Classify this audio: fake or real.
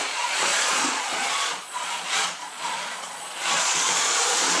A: fake